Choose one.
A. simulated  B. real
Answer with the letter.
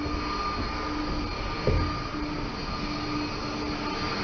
B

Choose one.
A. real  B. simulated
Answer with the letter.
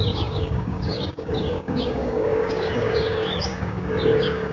B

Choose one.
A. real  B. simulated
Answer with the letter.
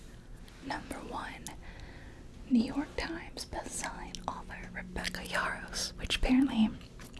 A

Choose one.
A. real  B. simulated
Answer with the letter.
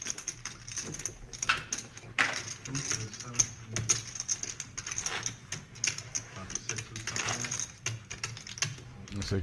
A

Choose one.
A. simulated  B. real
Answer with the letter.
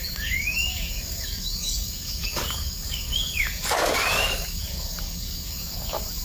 A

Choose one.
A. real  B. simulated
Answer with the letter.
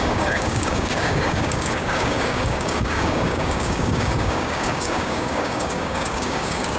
B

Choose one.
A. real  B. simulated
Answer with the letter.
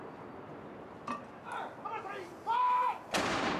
A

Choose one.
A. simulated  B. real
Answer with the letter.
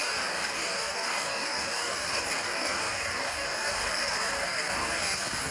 A